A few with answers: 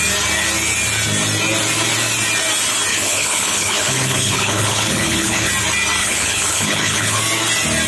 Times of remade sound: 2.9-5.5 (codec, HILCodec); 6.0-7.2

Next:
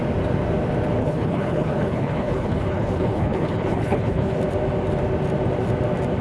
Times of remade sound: 1.0-4.4 (codec, HILCodec)

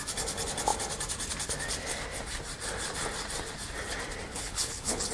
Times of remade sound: 4.3-5.1 (codec, HILCodec)